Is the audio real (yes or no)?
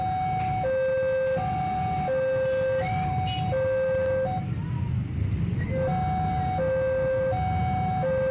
yes